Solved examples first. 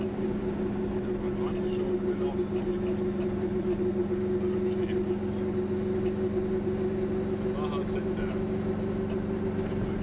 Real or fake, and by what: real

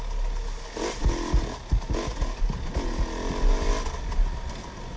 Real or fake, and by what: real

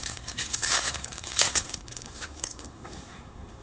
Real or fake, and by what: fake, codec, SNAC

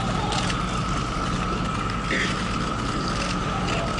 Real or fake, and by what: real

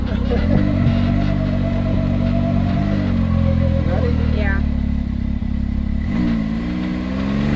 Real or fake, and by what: real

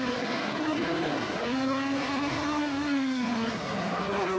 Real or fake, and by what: fake, codec, SNAC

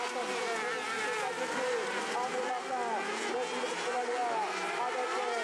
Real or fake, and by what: real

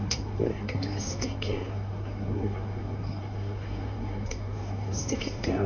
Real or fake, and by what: fake, codec, SNAC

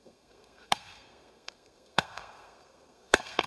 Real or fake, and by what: fake, codec, SNAC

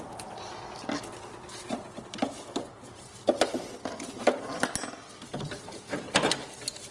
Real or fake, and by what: real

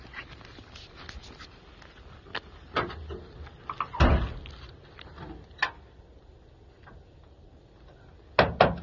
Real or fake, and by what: real